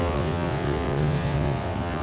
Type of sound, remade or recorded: remade